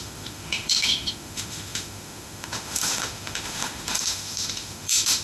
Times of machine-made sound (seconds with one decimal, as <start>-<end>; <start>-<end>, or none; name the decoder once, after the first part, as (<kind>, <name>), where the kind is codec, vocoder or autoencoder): 0.0-5.2 (autoencoder, DAC-VAE)